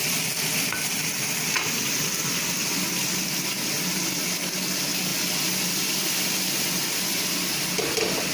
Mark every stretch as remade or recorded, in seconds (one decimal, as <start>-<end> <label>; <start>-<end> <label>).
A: 0.0-8.3 recorded